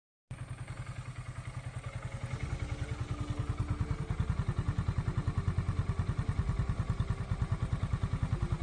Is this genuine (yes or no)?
yes